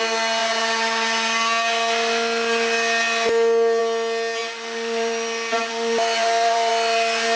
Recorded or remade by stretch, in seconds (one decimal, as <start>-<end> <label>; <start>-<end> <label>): 0.0-4.4 recorded; 4.4-6.7 remade; 6.7-7.4 recorded